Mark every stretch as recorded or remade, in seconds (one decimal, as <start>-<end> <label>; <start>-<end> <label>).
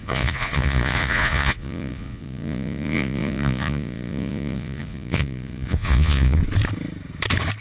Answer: 0.0-6.4 remade; 6.4-7.6 recorded